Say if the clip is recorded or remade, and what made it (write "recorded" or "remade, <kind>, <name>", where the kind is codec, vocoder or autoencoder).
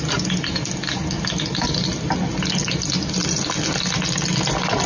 recorded